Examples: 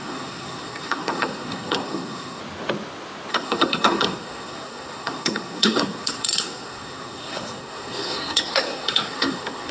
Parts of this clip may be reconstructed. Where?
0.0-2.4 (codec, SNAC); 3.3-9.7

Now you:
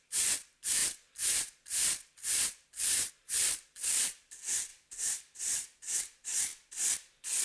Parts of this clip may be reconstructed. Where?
0.0-6.5 (vocoder, BigVGAN v2)

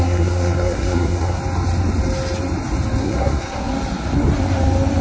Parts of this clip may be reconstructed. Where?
0.0-1.4 (codec, SNAC); 3.0-3.7